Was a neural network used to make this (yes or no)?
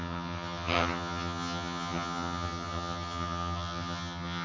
yes